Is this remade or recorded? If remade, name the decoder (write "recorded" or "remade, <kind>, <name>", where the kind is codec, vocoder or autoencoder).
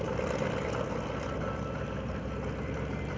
recorded